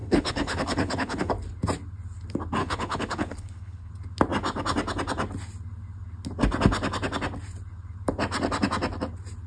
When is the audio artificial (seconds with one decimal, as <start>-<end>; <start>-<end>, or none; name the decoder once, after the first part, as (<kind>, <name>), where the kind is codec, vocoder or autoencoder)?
0.0-1.3 (codec, HILCodec); 2.6-3.9